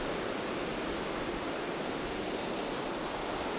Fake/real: real